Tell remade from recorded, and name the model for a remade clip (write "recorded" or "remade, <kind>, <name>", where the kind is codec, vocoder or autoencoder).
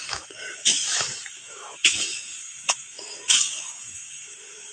remade, codec, DAC